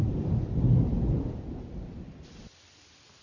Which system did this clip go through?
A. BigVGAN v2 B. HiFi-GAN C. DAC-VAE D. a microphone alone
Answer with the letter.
D